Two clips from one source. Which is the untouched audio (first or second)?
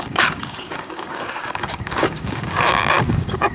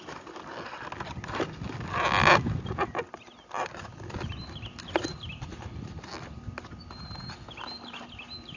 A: second